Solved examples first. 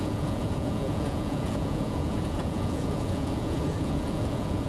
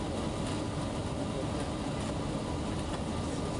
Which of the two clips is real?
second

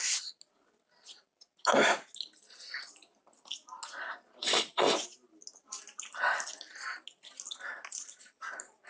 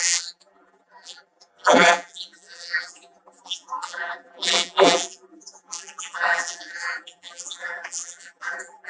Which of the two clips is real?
first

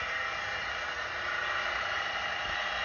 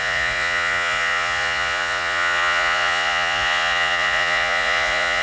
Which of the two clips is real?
first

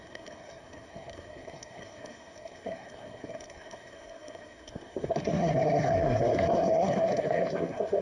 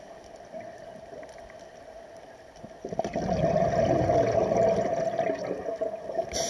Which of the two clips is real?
second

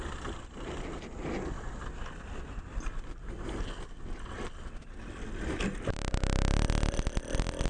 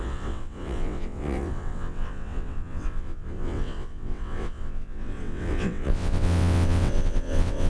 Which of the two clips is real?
first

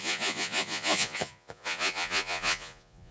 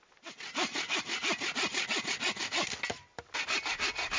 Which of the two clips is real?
second